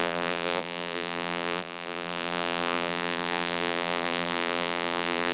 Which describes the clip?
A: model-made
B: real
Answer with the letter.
A